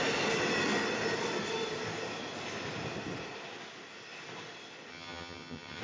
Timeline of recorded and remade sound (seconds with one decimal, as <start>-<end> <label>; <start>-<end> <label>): 0.0-4.9 recorded; 4.9-5.8 remade